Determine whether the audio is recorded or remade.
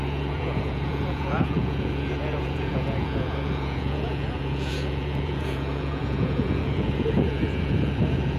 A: remade